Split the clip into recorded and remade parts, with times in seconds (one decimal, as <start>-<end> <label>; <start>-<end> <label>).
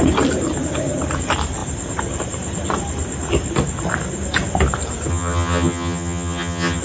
0.0-5.1 recorded; 5.1-6.8 remade